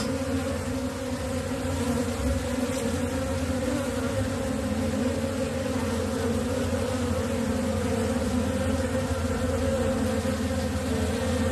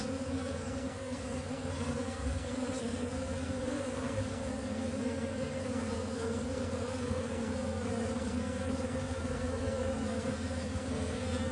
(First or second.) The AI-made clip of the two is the second